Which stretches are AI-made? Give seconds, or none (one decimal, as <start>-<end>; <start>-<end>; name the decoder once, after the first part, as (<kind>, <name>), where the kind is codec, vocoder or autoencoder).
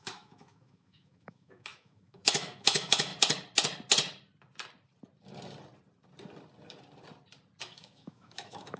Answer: 0.0-3.1 (autoencoder, DAC-VAE); 7.6-8.8